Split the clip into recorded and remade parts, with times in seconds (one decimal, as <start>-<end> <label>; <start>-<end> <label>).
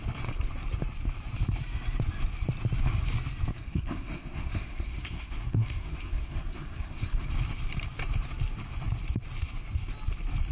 0.0-3.5 recorded; 3.5-7.3 remade; 7.3-10.5 recorded